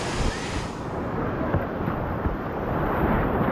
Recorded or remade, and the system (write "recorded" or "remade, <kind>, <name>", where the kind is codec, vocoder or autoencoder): recorded